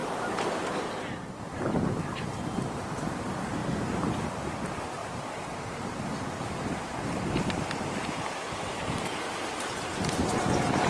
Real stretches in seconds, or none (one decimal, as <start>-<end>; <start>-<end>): 1.9-3.6; 4.5-5.0; 7.6-10.9